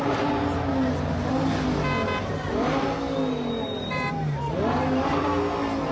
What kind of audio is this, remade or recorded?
recorded